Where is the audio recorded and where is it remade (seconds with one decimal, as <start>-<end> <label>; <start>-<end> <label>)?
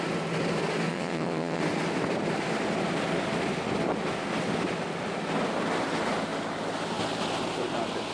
0.0-0.9 recorded; 0.9-1.6 remade; 1.6-8.1 recorded